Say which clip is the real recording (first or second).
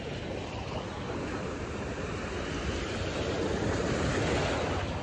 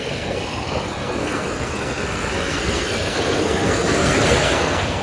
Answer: first